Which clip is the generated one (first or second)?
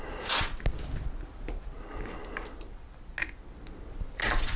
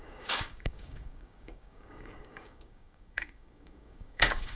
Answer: second